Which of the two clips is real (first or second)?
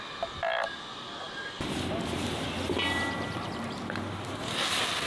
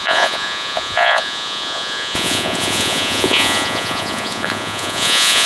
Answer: first